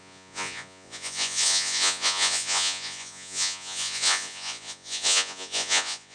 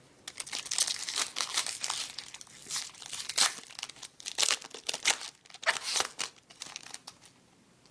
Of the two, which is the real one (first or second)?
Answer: second